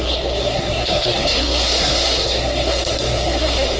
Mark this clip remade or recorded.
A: remade